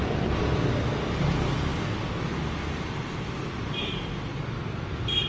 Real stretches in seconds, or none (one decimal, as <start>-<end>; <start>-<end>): 0.0-5.3